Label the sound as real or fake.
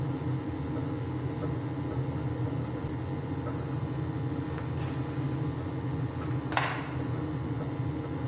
real